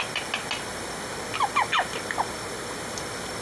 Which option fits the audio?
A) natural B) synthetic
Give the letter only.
A